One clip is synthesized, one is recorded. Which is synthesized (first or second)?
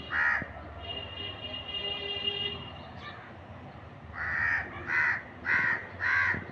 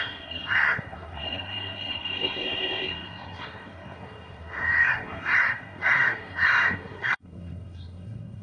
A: second